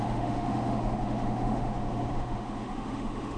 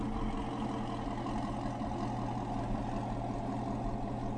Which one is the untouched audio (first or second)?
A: second